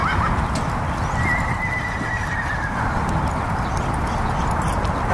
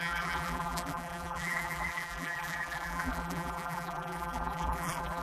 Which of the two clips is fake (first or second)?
second